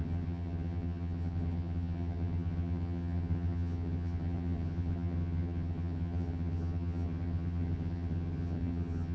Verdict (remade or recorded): remade